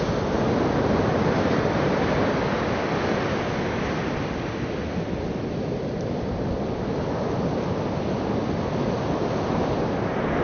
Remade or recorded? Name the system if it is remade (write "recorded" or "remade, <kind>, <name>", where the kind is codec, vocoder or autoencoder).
recorded